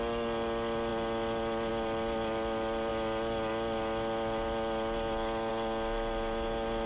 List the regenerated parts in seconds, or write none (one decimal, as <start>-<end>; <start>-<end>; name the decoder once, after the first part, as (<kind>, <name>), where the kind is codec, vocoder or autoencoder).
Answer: none